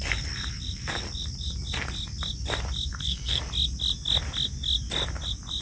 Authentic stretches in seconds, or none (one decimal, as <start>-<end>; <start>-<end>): 0.0-2.9; 3.4-5.6